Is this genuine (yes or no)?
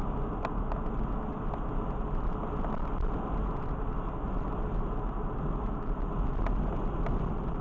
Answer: yes